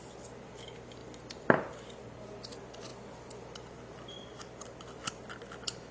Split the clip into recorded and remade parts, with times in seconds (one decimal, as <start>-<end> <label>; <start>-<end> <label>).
0.0-5.9 recorded